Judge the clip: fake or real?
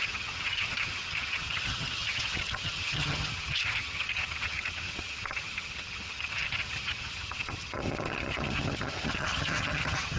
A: fake